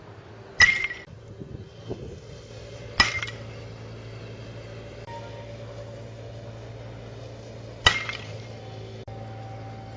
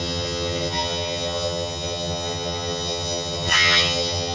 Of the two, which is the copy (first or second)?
second